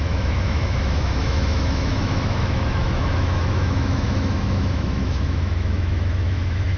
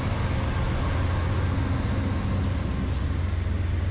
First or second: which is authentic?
second